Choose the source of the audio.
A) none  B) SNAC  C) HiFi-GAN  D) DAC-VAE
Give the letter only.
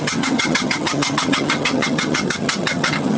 C